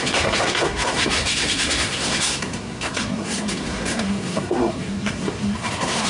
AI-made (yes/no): yes